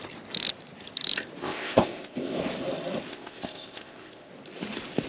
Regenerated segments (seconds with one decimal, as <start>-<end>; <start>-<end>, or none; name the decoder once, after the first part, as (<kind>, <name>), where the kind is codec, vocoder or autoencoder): 1.4-2.4 (codec, ZipCodec); 3.1-4.3